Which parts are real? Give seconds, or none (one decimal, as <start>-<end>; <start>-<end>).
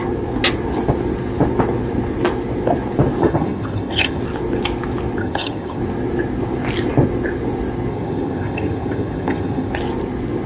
0.0-3.2; 4.2-5.2; 5.8-7.9; 9.7-10.5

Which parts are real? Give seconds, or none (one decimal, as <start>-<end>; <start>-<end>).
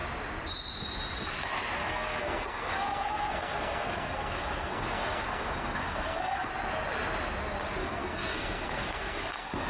0.0-1.8; 6.5-7.8